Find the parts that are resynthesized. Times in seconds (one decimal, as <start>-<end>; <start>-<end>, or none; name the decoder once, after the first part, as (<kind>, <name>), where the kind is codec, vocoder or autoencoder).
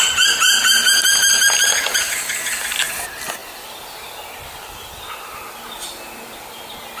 none